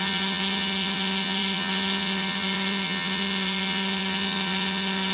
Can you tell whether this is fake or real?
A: fake